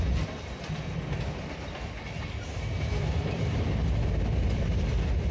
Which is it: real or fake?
real